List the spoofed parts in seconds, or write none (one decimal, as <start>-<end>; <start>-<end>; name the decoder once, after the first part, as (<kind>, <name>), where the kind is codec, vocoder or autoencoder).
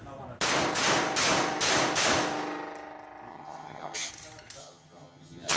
3.3-4.1 (vocoder, HiFi-GAN); 4.6-5.6